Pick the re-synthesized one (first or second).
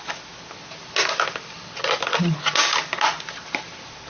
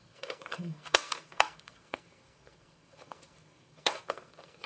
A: second